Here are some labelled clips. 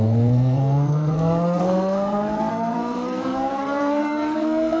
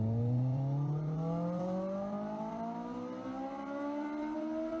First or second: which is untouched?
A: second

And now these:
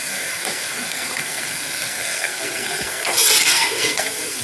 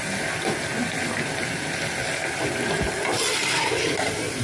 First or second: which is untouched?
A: second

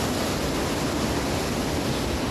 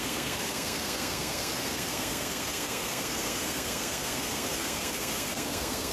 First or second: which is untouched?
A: first